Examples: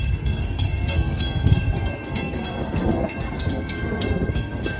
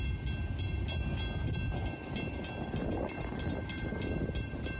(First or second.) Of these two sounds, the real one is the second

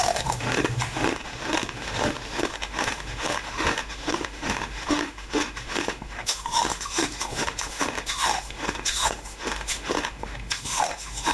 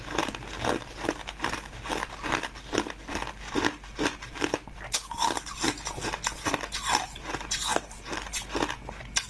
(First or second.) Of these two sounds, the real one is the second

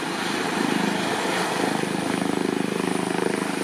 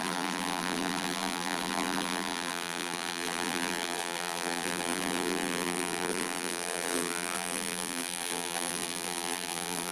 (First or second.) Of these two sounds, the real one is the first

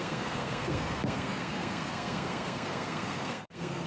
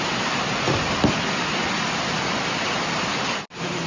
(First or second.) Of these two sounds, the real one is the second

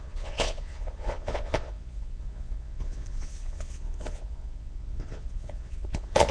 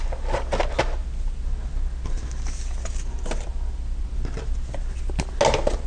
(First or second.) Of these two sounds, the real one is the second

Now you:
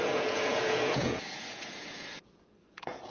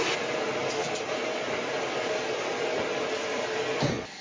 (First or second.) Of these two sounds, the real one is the second